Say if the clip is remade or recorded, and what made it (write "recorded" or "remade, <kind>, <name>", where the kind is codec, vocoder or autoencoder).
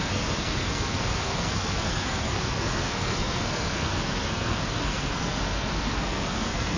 remade, codec, SNAC